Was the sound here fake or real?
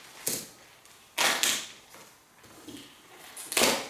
real